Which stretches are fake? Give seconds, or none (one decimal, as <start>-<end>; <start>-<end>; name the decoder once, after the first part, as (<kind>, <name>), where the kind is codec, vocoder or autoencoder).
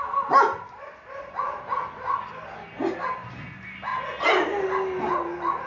none